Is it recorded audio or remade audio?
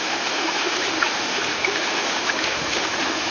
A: remade